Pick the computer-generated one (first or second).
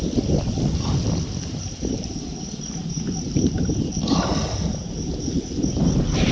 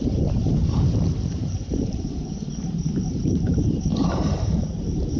second